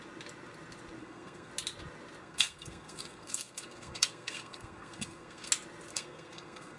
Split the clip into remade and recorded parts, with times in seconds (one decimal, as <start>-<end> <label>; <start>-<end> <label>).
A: 0.0-1.0 recorded; 1.0-1.5 remade; 1.5-2.2 recorded; 2.2-5.5 remade; 5.5-5.9 recorded; 5.9-6.8 remade